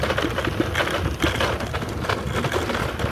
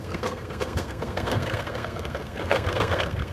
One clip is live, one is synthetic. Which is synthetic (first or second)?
second